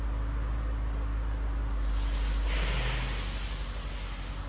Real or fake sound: real